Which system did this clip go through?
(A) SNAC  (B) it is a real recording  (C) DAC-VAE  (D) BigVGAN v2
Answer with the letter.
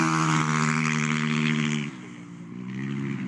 B